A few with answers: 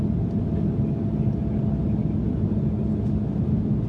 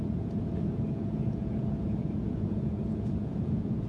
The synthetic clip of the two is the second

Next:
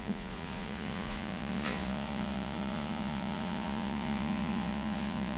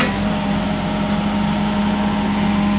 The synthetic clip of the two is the first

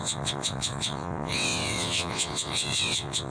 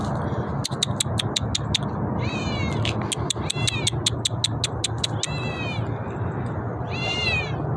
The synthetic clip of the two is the first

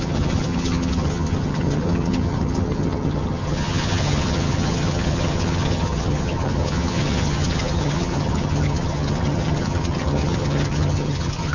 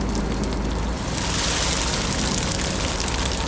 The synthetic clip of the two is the first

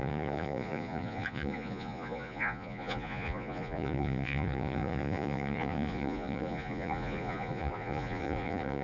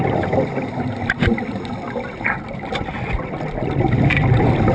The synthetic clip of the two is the first